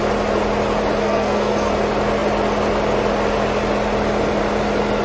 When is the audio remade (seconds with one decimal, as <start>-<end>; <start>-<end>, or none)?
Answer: 1.0-1.7